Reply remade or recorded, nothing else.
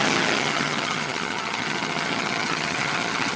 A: remade